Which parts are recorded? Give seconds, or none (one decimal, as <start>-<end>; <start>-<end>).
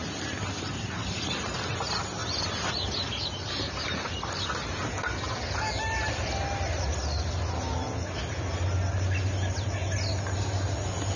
1.7-11.2